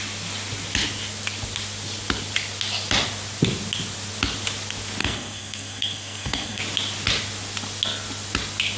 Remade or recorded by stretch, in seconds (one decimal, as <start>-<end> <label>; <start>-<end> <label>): 0.0-5.0 recorded; 5.0-6.6 remade; 6.6-8.8 recorded